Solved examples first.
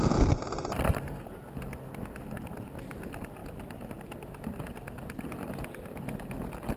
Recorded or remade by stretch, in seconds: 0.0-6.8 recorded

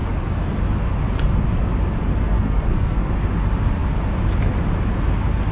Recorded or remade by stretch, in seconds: 0.0-2.1 recorded; 2.1-3.1 remade; 3.1-5.5 recorded